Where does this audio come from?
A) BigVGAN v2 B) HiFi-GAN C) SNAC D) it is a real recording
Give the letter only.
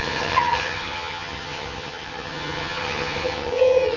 B